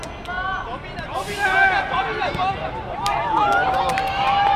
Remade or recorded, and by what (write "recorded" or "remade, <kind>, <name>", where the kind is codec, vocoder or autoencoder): recorded